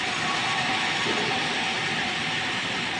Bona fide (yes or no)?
yes